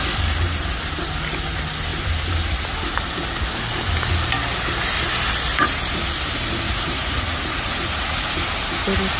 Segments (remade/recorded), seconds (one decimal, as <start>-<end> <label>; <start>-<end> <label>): 0.0-6.7 recorded; 6.7-8.1 remade; 8.1-9.2 recorded